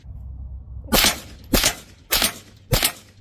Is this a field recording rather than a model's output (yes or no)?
yes